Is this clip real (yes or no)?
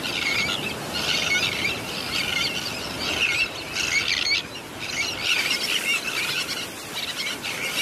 yes